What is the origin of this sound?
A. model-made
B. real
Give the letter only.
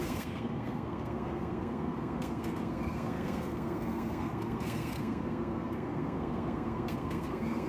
A